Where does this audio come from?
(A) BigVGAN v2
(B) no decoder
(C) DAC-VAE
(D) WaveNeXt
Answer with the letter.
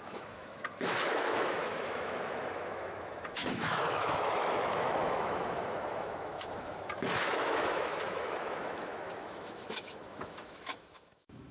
C